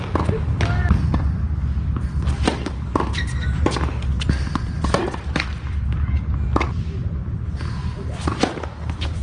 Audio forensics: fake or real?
real